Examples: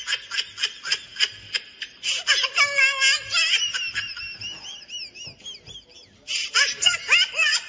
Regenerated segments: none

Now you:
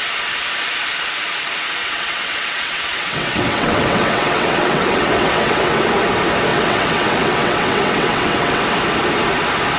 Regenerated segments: 1.8-5.9 (vocoder, WaveNeXt); 6.5-8.6

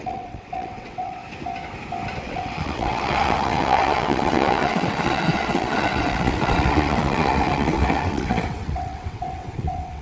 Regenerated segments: 0.0-1.2 (vocoder, WaveNeXt); 2.2-10.0

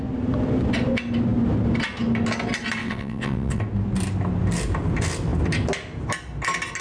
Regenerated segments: 2.8-3.6 (vocoder, WaveNeXt)

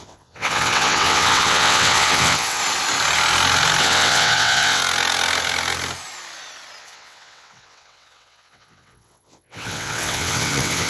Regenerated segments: 0.0-2.6 (vocoder, WaveNeXt); 3.8-4.8; 6.8-10.9

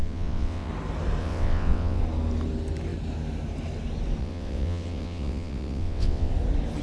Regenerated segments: 0.0-0.7 (vocoder, WaveNeXt); 1.2-2.0; 4.2-6.3